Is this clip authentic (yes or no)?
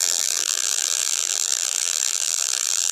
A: no